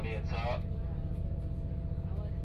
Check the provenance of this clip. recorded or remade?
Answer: recorded